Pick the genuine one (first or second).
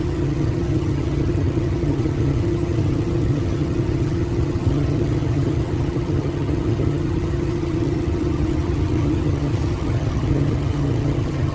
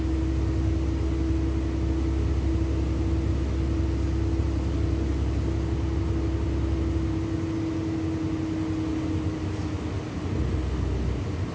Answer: second